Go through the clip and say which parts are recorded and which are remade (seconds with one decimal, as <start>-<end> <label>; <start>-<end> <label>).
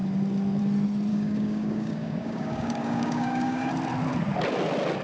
0.0-1.1 recorded; 1.1-3.7 remade; 3.7-5.0 recorded